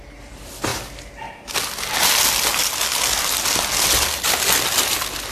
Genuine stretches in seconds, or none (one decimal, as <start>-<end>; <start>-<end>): 0.0-5.3